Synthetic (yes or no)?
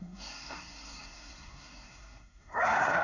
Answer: yes